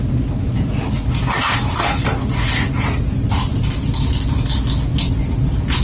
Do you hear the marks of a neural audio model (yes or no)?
no